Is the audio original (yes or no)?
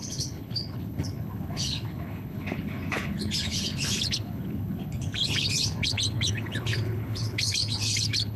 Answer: no